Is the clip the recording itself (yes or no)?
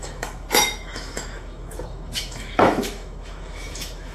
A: no